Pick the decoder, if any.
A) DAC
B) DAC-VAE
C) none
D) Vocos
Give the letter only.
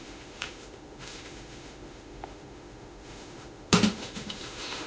B